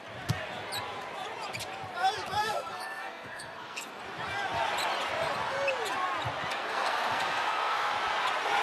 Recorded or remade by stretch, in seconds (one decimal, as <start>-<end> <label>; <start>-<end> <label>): 0.0-2.4 recorded; 2.4-4.0 remade; 4.0-6.5 recorded; 6.5-7.9 remade; 7.9-8.6 recorded